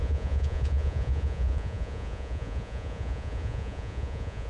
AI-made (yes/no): yes